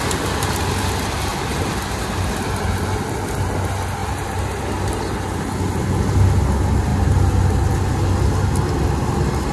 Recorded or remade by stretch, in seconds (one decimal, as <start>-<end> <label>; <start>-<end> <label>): 0.0-1.3 recorded; 1.3-2.3 remade; 2.3-9.5 recorded